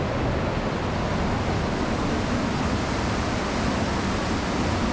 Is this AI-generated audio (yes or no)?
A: no